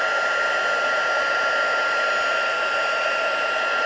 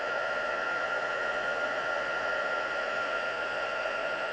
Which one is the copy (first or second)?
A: second